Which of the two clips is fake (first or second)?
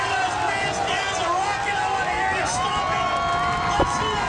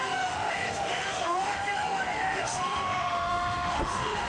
second